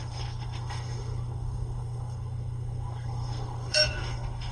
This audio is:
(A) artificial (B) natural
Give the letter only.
A